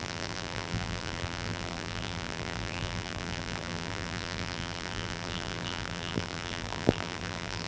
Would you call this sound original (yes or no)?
no